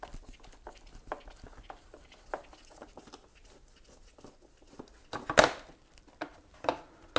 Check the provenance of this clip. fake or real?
real